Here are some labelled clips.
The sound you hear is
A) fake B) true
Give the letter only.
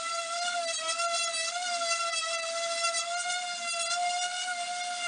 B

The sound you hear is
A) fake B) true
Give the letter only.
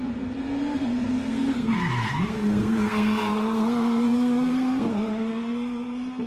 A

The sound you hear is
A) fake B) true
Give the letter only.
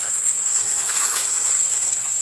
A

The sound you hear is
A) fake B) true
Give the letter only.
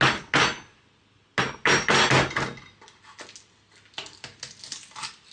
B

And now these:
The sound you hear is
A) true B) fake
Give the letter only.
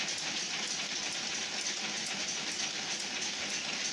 A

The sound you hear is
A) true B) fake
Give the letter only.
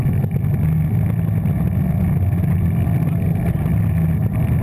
A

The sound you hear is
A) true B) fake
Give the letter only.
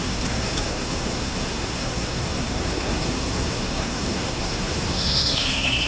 B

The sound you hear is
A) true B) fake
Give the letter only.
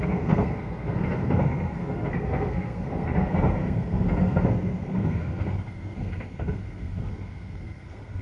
B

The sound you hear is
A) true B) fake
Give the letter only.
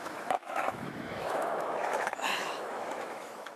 B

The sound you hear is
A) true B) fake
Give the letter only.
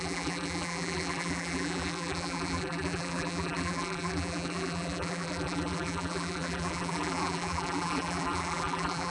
B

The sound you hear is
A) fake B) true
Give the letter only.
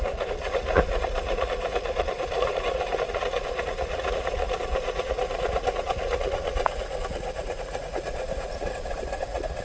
A